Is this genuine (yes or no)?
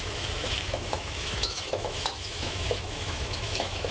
no